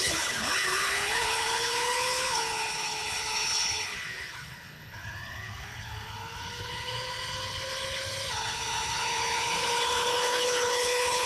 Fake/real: fake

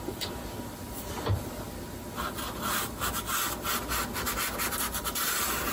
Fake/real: real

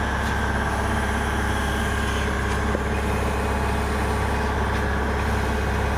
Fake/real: real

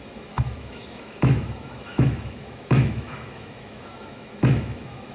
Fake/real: fake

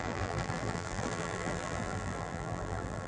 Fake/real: fake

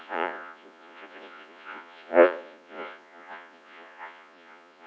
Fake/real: fake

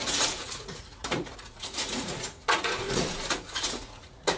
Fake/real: fake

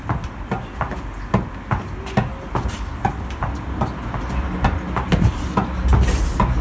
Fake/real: real